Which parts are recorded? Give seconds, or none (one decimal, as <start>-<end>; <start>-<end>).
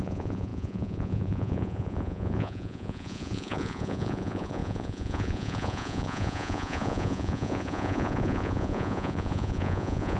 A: none